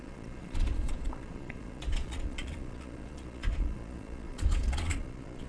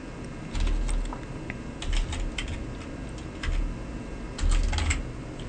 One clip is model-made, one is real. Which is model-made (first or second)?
first